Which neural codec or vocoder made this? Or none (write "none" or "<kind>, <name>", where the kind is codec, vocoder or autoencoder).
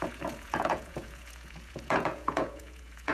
vocoder, Vocos